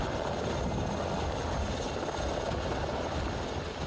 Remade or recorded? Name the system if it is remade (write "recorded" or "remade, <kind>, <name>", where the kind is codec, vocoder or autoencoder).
recorded